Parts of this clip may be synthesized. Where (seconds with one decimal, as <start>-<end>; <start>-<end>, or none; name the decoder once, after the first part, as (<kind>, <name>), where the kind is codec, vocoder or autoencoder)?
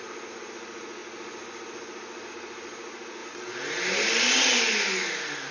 3.2-4.6 (vocoder, BigVGAN v2)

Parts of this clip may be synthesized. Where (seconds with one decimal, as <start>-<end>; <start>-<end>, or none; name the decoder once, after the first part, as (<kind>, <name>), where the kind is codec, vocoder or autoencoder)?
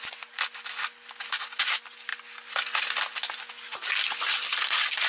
none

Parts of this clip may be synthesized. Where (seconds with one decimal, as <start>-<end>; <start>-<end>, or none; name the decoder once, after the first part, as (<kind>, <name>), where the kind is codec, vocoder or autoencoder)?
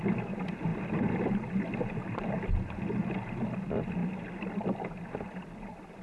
none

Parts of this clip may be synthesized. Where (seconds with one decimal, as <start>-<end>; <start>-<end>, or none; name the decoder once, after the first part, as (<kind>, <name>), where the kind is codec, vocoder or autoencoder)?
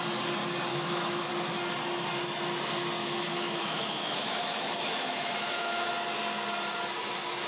0.7-1.3 (autoencoder, DAC-VAE); 3.0-5.9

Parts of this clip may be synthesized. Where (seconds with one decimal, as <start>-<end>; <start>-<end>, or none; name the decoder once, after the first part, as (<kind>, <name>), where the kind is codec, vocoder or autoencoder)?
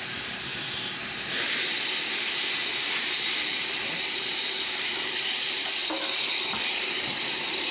0.0-5.8 (vocoder, BigVGAN v2); 6.9-7.7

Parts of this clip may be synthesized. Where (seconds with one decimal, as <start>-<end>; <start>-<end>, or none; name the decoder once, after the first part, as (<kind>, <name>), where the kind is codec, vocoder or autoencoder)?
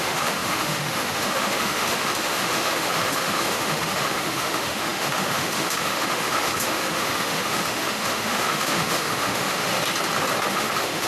0.0-9.7 (autoencoder, DAC-VAE); 10.5-11.1